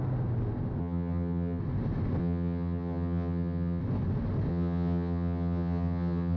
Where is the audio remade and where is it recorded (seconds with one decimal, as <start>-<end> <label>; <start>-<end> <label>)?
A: 0.0-0.8 recorded; 0.8-1.6 remade; 1.6-2.2 recorded; 2.2-3.8 remade; 3.8-4.5 recorded; 4.5-6.4 remade